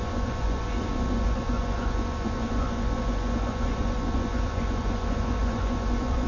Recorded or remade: remade